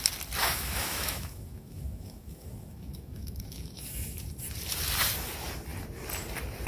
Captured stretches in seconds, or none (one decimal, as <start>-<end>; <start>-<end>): 0.0-0.4; 4.2-6.7